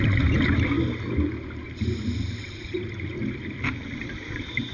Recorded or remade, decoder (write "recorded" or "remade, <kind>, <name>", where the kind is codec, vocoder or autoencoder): recorded